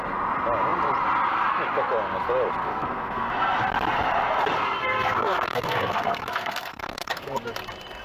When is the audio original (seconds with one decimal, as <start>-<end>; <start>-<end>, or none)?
0.0-2.6; 3.3-4.8; 7.5-8.0